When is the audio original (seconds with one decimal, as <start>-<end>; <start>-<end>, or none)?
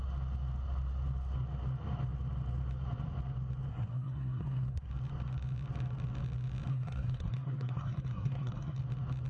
0.0-3.7; 4.9-6.7; 8.8-9.3